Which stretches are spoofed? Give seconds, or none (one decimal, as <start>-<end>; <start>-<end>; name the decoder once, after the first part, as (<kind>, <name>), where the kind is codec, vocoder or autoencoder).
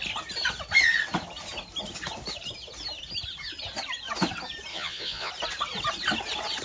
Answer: 4.7-5.3 (vocoder, Vocos)